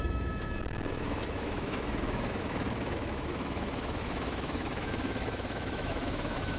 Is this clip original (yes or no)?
no